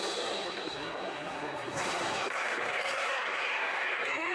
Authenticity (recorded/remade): remade